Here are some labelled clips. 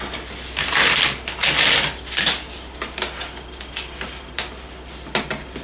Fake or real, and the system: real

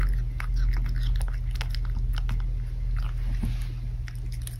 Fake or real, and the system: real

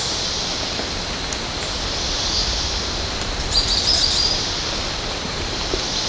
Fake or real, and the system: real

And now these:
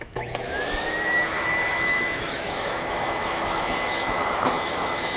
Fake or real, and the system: fake, autoencoder, DAC-VAE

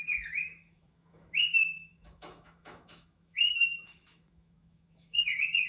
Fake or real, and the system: fake, autoencoder, DAC-VAE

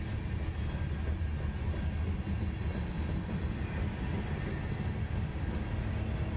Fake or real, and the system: real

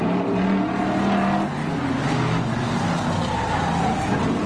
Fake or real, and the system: real